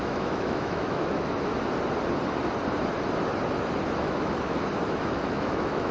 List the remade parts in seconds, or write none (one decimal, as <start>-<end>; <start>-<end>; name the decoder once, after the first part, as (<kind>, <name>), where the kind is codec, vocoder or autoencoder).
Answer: 0.0-1.5 (autoencoder, DAC-VAE); 4.0-5.9